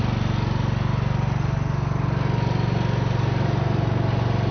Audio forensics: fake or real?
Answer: real